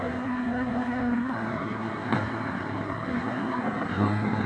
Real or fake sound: fake